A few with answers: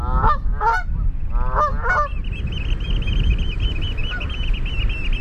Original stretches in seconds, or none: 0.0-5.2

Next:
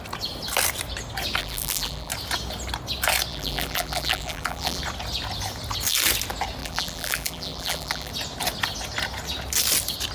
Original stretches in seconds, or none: 0.0-1.4; 2.1-3.3; 4.8-6.6; 8.1-10.1

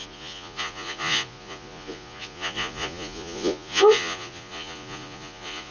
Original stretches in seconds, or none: none

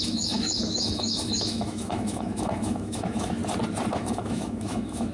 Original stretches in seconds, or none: 3.4-3.9

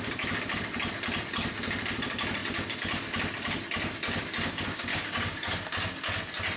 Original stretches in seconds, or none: 0.0-4.9; 5.5-6.6

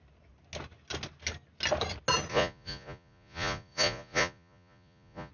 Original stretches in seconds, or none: 0.0-2.3

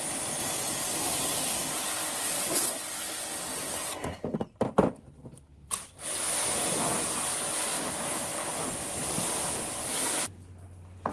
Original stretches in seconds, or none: 0.0-11.1